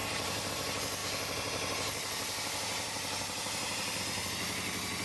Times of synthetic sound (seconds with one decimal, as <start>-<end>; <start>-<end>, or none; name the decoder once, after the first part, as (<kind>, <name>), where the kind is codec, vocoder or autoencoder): 0.0-0.5 (vocoder, BigVGAN v2); 1.0-4.0